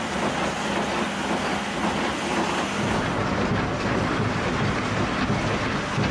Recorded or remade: recorded